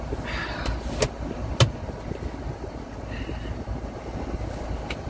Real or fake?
real